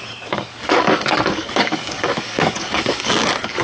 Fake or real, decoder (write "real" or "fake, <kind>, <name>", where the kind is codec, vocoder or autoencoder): fake, codec, DAC